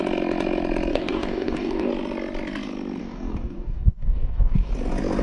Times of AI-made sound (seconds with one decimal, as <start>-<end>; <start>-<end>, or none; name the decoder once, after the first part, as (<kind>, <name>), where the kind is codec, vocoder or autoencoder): 0.9-1.9 (codec, DAC); 3.0-4.7